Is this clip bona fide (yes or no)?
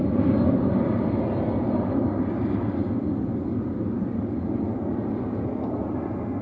yes